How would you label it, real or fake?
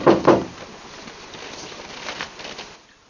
real